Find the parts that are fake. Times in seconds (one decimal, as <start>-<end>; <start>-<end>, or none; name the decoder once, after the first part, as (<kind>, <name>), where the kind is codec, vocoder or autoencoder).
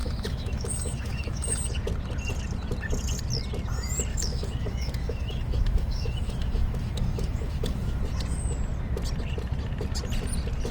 0.0-1.6 (autoencoder, DAC-VAE); 4.1-8.0